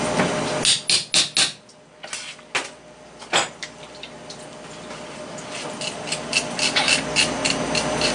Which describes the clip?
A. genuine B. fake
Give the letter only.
A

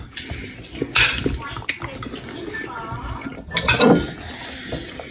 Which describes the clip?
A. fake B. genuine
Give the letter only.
B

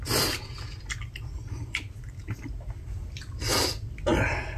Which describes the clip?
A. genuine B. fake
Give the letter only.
A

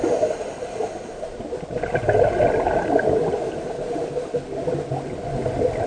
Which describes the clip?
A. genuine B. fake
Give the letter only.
A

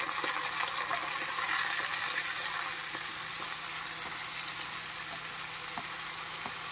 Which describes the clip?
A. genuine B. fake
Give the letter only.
A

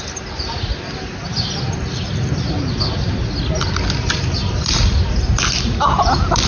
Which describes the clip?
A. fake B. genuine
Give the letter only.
B